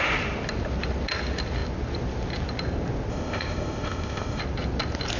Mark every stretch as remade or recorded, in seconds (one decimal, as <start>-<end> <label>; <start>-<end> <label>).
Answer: 0.0-3.1 recorded; 3.1-4.4 remade; 4.4-5.2 recorded